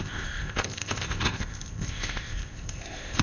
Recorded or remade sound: remade